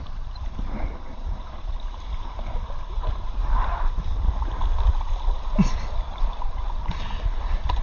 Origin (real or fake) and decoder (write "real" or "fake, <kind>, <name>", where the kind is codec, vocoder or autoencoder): fake, vocoder, BigVGAN v2